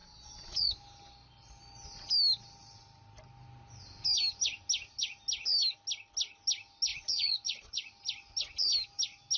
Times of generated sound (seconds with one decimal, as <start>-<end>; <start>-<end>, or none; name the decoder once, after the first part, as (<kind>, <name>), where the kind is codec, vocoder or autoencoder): 0.0-0.7 (vocoder, Vocos); 6.9-7.7